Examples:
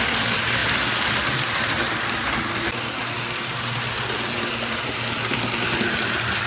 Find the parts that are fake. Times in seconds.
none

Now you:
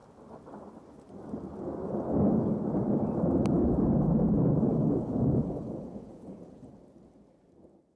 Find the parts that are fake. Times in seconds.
4.7-6.7

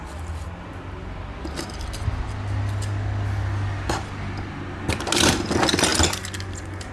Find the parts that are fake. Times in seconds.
none

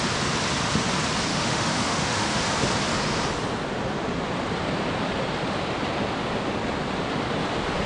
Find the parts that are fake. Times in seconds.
1.3-2.4

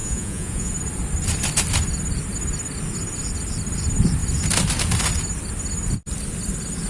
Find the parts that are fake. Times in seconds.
0.0-0.7